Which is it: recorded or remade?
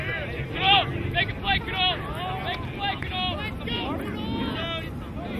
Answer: recorded